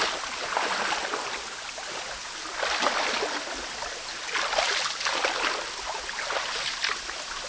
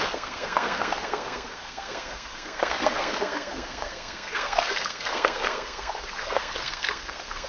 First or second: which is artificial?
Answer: second